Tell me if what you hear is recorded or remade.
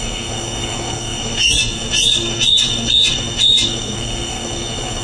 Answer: remade